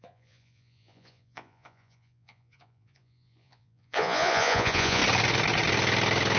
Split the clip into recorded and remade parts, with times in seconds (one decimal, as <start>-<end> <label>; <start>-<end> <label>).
0.0-5.0 remade; 5.0-6.4 recorded